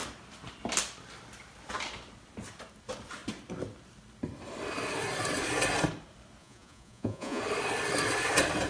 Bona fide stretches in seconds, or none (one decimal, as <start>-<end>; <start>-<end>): 0.0-6.4; 7.4-8.7